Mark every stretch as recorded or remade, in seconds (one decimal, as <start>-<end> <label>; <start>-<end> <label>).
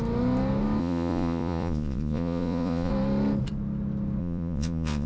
0.0-0.8 recorded; 0.8-2.9 remade; 2.9-4.2 recorded; 4.2-5.1 remade